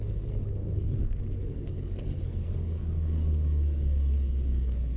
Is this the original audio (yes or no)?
no